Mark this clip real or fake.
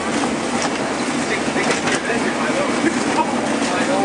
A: real